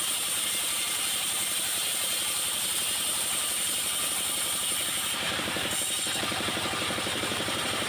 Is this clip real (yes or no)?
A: no